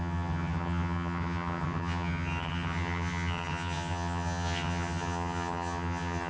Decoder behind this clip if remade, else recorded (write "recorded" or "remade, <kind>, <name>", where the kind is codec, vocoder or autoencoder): remade, vocoder, HiFi-GAN